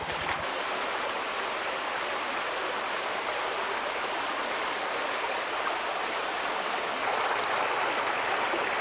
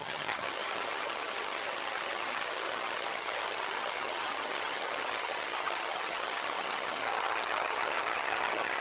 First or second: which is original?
first